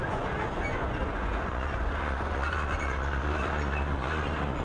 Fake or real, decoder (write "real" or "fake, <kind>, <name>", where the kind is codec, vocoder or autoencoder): fake, vocoder, Vocos